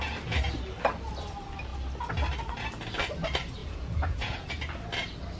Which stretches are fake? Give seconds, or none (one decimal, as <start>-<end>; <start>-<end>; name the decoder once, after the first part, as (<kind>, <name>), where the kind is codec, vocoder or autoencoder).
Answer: 3.6-4.5 (vocoder, Vocos)